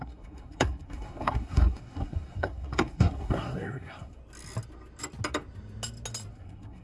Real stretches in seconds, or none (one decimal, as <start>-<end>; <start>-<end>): 4.2-6.3